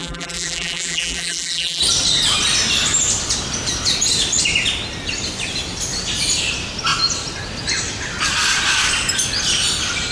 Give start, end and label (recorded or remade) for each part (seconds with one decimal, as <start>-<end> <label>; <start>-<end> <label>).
0.0-1.8 remade; 1.8-10.1 recorded